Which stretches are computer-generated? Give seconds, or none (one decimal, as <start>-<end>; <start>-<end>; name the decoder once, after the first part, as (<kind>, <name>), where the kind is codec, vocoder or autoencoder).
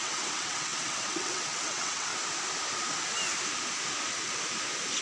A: 0.0-2.1 (vocoder, WaveNeXt)